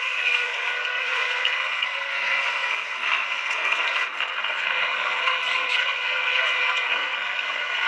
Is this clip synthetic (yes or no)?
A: yes